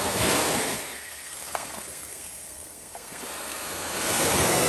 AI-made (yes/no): yes